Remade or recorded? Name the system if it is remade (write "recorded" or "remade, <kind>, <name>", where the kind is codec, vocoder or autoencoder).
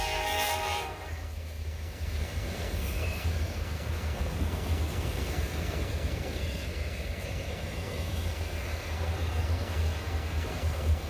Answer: remade, codec, SNAC